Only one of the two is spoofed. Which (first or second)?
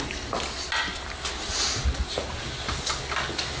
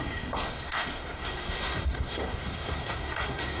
second